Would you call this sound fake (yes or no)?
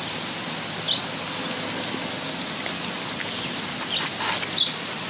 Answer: no